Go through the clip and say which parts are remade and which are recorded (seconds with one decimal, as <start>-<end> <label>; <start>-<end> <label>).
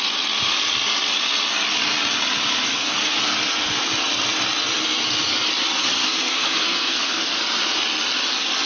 0.0-2.7 recorded; 2.7-3.3 remade; 3.3-5.8 recorded; 5.8-7.4 remade; 7.4-8.7 recorded